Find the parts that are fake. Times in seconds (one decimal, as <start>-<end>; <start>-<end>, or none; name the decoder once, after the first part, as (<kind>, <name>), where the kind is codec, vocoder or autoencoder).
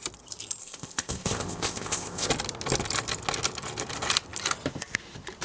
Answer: 0.6-2.3 (codec, ZipCodec)